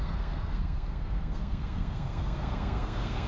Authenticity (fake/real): fake